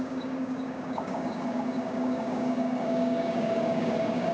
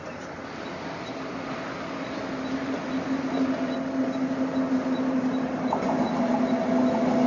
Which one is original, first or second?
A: second